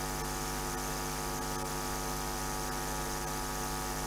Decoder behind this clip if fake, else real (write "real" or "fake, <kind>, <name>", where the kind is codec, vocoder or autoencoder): real